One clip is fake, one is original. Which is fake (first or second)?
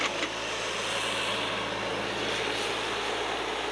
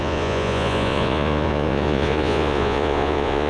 second